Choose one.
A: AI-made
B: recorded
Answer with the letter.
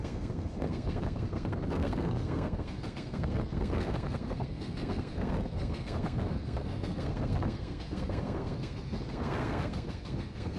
A